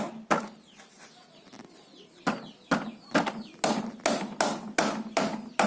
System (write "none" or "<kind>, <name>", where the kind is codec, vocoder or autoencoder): none